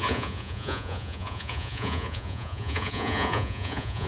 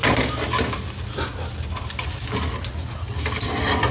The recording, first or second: second